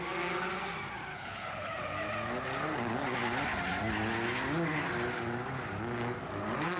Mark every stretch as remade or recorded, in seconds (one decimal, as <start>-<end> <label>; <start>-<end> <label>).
0.0-1.1 recorded; 1.1-1.7 remade; 1.7-6.8 recorded